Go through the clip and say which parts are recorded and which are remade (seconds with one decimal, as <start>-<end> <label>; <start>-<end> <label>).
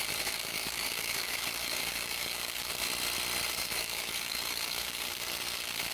0.0-2.9 remade; 2.9-3.5 recorded; 3.5-5.9 remade